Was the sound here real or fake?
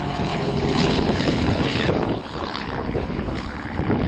fake